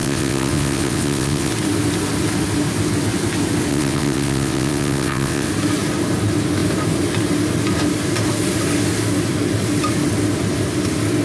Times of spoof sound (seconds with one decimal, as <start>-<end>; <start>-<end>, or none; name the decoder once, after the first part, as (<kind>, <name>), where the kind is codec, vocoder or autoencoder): 0.0-1.5 (vocoder, WaveNeXt); 3.7-5.5